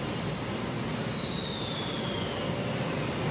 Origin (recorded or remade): recorded